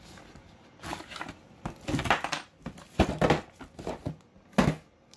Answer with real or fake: real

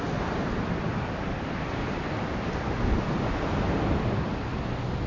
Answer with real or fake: real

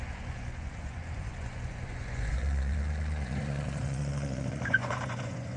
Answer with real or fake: fake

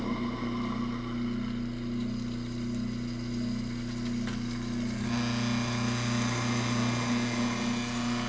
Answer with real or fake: real